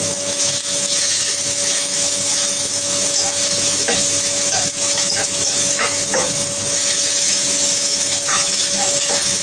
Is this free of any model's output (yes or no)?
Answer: no